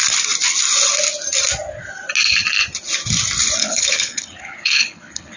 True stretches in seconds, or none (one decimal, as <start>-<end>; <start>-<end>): 0.0-3.6